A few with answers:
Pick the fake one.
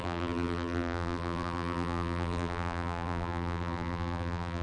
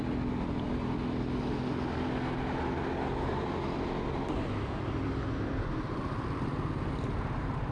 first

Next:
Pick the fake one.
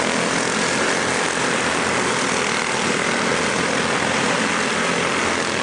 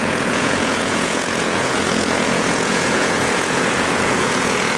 second